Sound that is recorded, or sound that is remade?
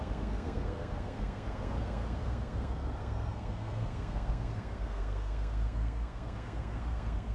remade